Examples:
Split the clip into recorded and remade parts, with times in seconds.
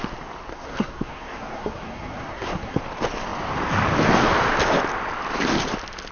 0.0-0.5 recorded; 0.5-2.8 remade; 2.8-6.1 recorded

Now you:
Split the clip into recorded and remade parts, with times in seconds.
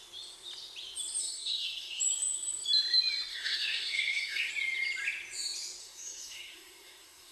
0.0-1.2 recorded; 1.2-2.0 remade; 2.0-3.3 recorded; 3.3-4.5 remade; 4.5-5.8 recorded; 5.8-7.3 remade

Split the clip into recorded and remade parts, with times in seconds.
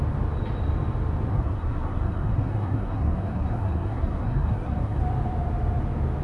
0.0-1.3 recorded; 1.3-5.0 remade; 5.0-6.2 recorded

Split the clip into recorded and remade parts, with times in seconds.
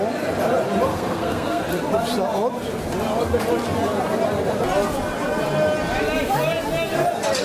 0.0-0.9 recorded; 0.9-1.6 remade; 1.6-7.4 recorded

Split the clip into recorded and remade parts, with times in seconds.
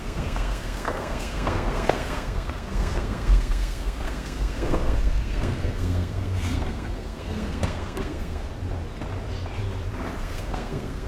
0.0-8.5 remade; 8.5-10.2 recorded; 10.2-11.1 remade